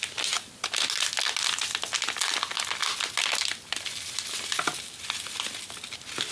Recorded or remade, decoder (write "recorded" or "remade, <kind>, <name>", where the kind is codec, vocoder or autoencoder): recorded